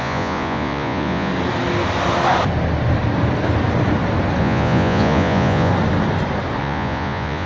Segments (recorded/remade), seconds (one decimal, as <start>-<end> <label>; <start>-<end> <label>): 0.0-1.3 remade; 1.3-4.4 recorded; 4.4-5.7 remade; 5.7-6.6 recorded; 6.6-7.5 remade